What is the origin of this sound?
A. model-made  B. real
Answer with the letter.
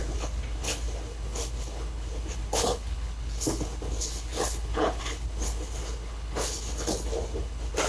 A